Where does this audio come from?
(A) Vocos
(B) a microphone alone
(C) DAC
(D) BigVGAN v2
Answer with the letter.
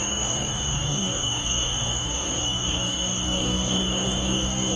C